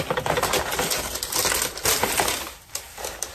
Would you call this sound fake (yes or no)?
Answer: no